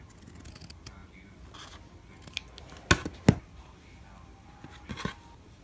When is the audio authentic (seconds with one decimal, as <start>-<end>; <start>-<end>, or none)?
0.0-5.6